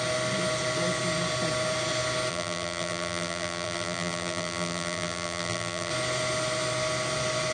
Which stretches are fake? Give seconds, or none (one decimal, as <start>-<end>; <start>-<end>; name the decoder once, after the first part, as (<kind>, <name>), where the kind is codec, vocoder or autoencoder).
2.3-5.9 (vocoder, BigVGAN v2)